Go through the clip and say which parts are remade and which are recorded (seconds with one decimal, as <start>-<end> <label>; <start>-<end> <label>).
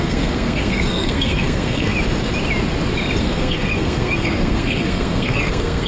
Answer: 0.0-1.9 remade; 1.9-3.2 recorded; 3.2-5.9 remade